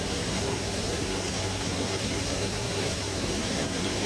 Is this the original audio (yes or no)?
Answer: no